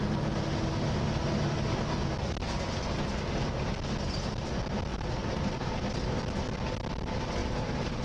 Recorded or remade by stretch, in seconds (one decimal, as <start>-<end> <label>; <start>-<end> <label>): 0.0-4.9 recorded; 4.9-5.8 remade; 5.8-7.4 recorded; 7.4-8.0 remade